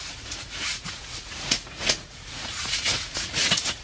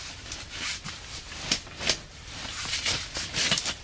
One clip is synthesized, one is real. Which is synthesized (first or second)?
first